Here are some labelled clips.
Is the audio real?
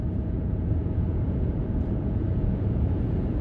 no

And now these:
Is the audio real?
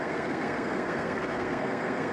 no